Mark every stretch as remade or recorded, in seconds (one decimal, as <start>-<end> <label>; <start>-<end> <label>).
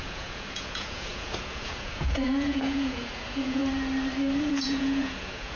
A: 0.0-3.6 remade; 3.6-4.4 recorded; 4.4-5.6 remade